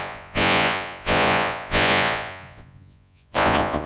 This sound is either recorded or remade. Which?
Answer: remade